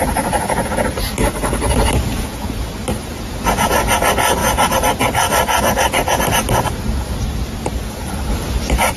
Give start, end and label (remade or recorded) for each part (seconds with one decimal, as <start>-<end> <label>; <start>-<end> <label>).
0.0-2.1 recorded; 2.1-2.7 remade; 2.7-4.4 recorded; 4.4-5.0 remade; 5.0-9.0 recorded